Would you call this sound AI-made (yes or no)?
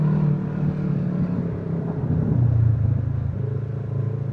no